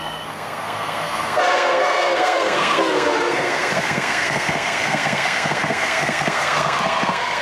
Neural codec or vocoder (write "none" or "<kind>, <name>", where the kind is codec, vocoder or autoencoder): codec, SNAC